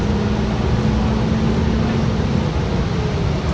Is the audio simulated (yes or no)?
no